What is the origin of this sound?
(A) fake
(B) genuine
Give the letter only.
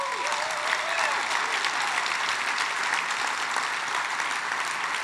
B